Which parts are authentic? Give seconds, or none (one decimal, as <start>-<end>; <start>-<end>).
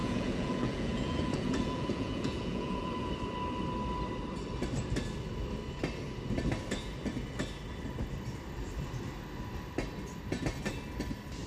3.1-11.5